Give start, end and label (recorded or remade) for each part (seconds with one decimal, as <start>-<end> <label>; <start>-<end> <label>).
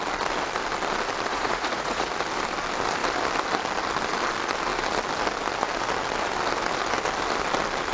0.0-1.3 recorded; 1.3-2.1 remade; 2.1-7.9 recorded